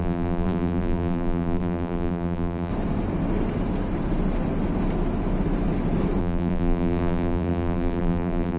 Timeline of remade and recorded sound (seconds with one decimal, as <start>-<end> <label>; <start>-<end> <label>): 0.0-2.7 remade; 2.7-6.2 recorded; 6.2-8.6 remade

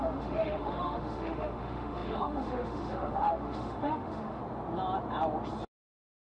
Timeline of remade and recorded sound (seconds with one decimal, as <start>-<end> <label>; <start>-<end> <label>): 0.0-4.4 remade; 4.4-5.8 recorded; 5.8-6.3 remade

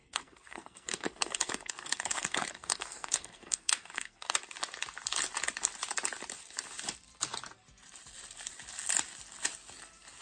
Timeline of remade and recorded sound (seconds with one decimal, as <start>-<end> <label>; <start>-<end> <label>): 0.0-4.4 remade; 4.4-10.2 recorded

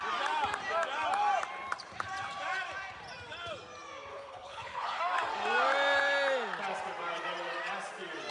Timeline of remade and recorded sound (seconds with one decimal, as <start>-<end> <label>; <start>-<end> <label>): 0.0-4.1 recorded; 4.1-5.0 remade; 5.0-8.3 recorded

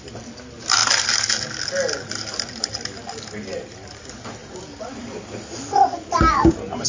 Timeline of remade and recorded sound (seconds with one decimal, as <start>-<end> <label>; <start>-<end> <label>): 0.0-6.9 recorded

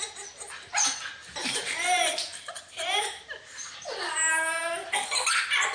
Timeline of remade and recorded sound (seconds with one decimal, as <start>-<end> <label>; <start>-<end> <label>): 0.0-5.7 recorded

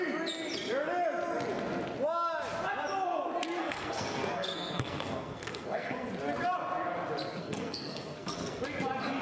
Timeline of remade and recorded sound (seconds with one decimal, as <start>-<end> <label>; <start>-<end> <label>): 0.0-3.6 recorded; 3.6-6.1 remade; 6.1-7.4 recorded; 7.4-8.6 remade; 8.6-9.2 recorded